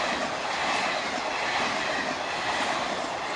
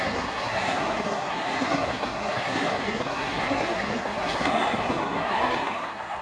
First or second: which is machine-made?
second